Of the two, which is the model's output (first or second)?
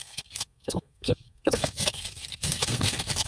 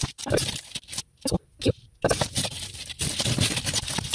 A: first